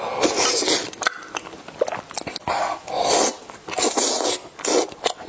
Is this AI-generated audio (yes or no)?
no